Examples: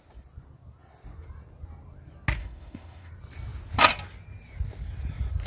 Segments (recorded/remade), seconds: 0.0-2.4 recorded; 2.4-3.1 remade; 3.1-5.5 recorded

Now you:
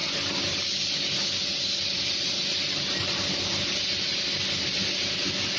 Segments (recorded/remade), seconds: 0.0-5.6 recorded

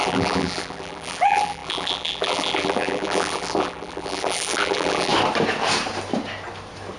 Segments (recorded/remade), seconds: 0.0-5.1 remade; 5.1-7.0 recorded

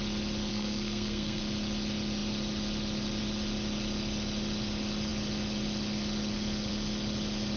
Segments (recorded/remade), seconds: 0.0-0.5 recorded; 0.5-1.4 remade; 1.4-7.6 recorded

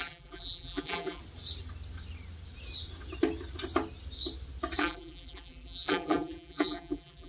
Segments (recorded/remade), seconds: 0.0-1.2 remade; 1.2-4.8 recorded; 4.8-7.3 remade

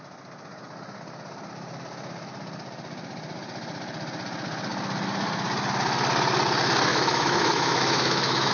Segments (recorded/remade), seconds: 0.0-6.9 recorded; 6.9-8.5 remade

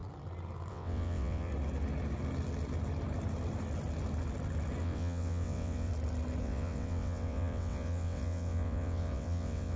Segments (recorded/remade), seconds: 0.0-0.7 recorded; 0.7-1.5 remade; 1.5-4.8 recorded; 4.8-5.9 remade; 5.9-6.4 recorded; 6.4-9.8 remade

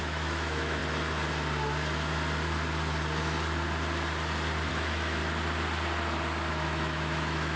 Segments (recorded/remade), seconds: 0.0-0.8 remade; 0.8-4.7 recorded; 4.7-5.2 remade; 5.2-6.5 recorded; 6.5-7.6 remade